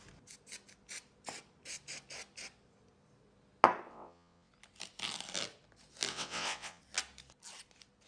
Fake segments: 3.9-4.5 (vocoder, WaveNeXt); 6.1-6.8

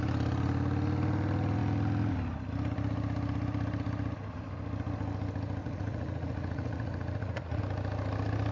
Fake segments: 5.6-7.6 (vocoder, Vocos)

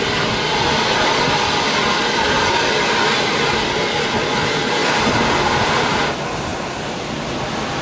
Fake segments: 0.0-4.8 (vocoder, BigVGAN v2); 5.3-6.5

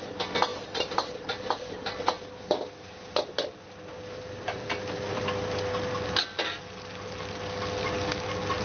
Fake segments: 0.5-2.2 (vocoder, BigVGAN v2); 3.9-5.2

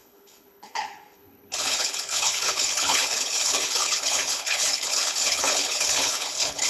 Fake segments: 0.0-6.7 (codec, HILCodec)

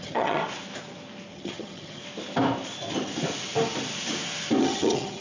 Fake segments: 0.0-0.4 (vocoder, HiFi-GAN); 1.3-2.0; 4.6-5.2

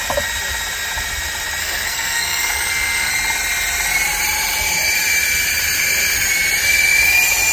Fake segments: 1.6-3.1 (codec, SNAC)

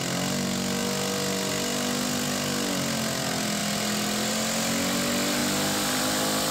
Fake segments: none